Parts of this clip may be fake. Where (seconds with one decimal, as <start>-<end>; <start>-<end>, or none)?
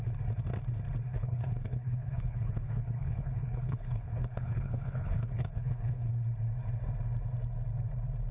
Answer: 1.1-6.1